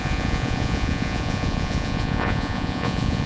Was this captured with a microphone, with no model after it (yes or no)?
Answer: no